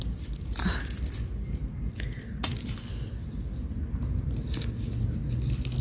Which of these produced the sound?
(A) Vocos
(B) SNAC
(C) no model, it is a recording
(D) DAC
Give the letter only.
C